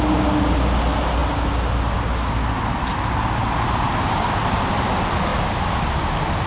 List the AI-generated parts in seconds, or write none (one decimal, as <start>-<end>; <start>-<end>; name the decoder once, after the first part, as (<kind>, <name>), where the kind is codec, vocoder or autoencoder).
none